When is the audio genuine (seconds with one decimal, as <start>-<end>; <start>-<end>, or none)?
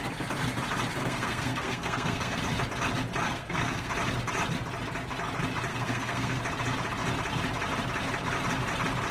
0.0-1.0; 2.4-3.2; 3.9-5.7; 6.4-9.1